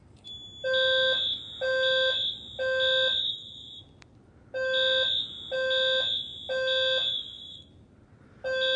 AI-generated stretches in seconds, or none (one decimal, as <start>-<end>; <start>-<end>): 3.2-3.8; 7.1-7.7